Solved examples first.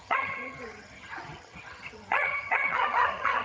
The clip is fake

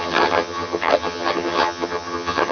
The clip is fake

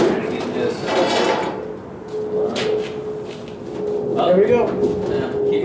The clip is real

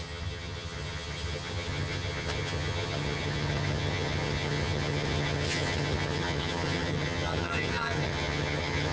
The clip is fake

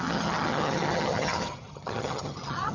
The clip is fake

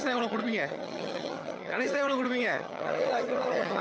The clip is fake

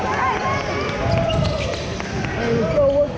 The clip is real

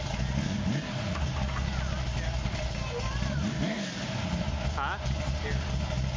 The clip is real